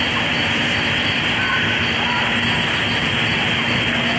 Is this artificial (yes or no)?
no